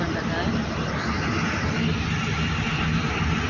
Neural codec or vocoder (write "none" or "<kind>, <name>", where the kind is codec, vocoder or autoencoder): none